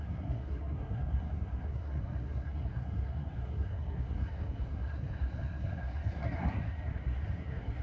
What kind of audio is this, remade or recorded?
remade